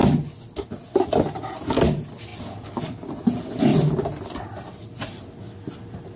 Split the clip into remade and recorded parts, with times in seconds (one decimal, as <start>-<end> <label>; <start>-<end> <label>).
0.0-6.2 recorded